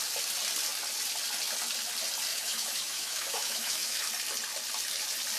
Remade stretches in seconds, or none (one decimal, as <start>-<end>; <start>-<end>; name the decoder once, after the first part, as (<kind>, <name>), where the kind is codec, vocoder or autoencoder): 2.3-4.1 (autoencoder, DAC-VAE)